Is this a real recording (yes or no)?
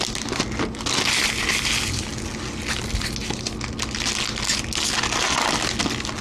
yes